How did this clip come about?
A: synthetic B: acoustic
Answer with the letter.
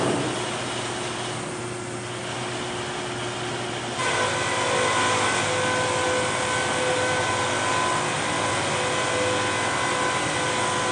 B